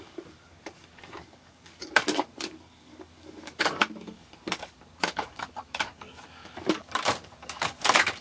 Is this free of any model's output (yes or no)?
no